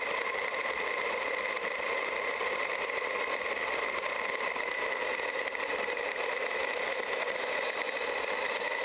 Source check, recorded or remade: recorded